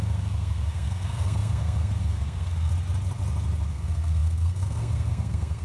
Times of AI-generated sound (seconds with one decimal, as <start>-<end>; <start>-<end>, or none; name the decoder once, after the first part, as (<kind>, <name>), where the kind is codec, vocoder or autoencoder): 0.0-2.7 (codec, SNAC); 3.7-5.6